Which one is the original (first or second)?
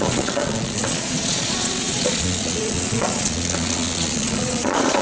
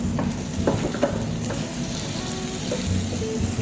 second